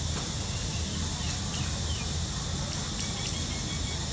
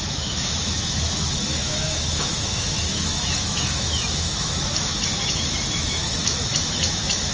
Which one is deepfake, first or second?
second